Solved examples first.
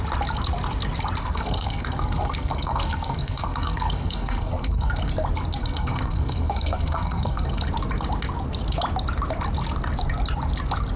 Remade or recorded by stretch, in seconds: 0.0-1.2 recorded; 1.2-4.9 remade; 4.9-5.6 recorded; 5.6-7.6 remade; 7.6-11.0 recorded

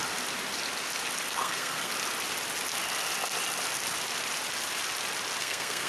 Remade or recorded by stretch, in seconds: 0.0-1.3 recorded; 1.3-1.9 remade; 1.9-5.4 recorded; 5.4-5.9 remade

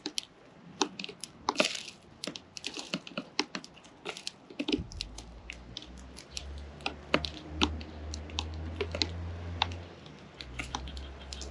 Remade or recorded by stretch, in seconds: 0.0-11.5 recorded

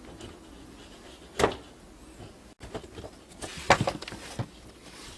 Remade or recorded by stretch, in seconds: 0.0-5.2 recorded

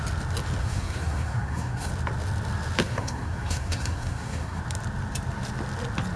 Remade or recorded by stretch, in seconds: 0.0-0.6 recorded; 0.6-1.9 remade; 1.9-2.8 recorded; 2.8-4.6 remade; 4.6-6.2 recorded